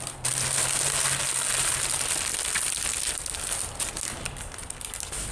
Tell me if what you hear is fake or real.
real